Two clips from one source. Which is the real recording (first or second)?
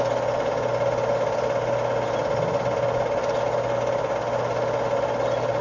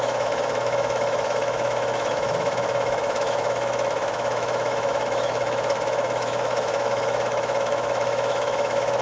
first